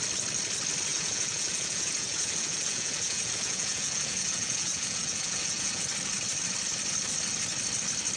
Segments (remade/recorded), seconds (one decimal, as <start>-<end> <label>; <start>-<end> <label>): 0.0-0.9 recorded; 0.9-5.8 remade; 5.8-8.2 recorded